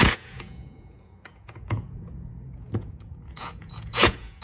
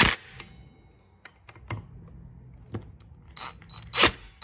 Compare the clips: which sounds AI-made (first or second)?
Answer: first